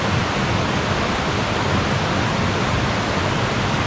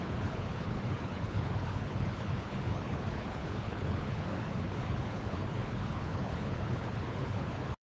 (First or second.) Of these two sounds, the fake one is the second